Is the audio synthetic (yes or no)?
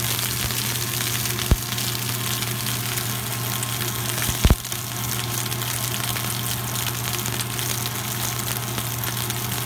no